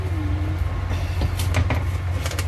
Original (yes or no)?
yes